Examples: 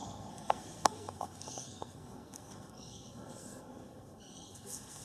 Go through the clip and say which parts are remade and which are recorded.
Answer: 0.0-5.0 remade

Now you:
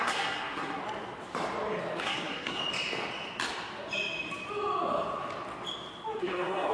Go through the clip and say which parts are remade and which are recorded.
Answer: 0.0-0.8 remade; 0.8-2.0 recorded; 2.0-2.6 remade; 2.6-6.2 recorded; 6.2-6.7 remade